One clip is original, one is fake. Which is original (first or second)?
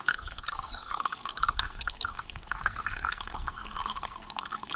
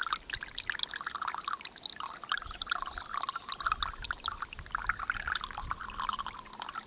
second